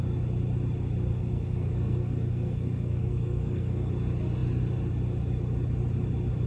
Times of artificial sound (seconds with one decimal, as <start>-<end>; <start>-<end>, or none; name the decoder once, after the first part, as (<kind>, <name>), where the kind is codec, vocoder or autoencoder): 1.1-3.9 (codec, SNAC)